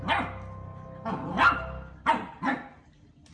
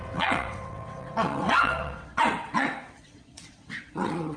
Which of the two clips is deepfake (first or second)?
second